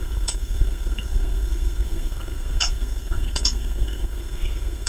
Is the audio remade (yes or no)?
yes